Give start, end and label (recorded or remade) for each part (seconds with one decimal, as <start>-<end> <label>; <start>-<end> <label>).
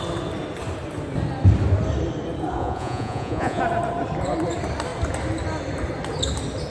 0.0-2.6 recorded; 2.6-3.6 remade; 3.6-6.7 recorded